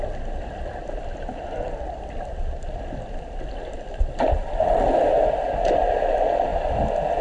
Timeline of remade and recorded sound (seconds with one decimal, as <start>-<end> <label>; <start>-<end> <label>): 0.0-0.7 recorded; 0.7-5.0 remade; 5.0-7.2 recorded